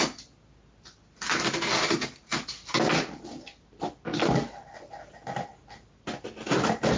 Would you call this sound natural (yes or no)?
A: yes